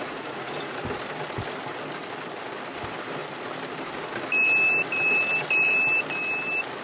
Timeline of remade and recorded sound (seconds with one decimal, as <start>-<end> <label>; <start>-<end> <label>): 0.0-0.8 remade; 0.8-6.8 recorded